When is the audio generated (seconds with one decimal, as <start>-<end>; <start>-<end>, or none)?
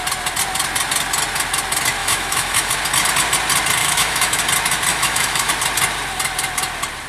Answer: 2.0-2.7; 3.8-4.4; 4.9-5.5